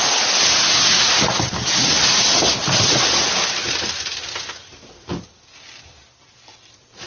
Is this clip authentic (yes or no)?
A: no